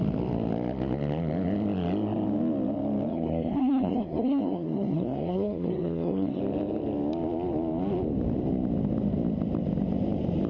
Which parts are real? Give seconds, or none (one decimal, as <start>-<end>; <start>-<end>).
0.0-3.1; 6.4-10.5